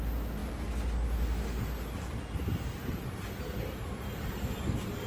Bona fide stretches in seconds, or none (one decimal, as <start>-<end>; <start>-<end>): 0.0-5.1